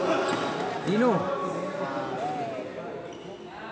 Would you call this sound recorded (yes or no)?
yes